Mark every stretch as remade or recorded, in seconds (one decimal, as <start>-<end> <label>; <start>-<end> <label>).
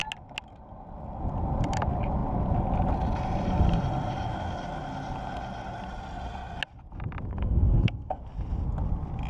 0.0-7.3 recorded; 7.3-8.2 remade; 8.2-9.3 recorded